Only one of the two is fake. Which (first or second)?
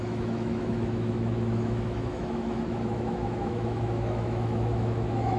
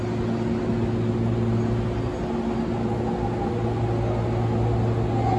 first